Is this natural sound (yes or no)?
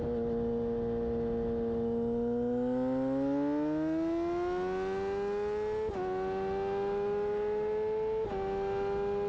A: yes